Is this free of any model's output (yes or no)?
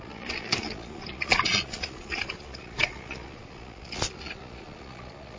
no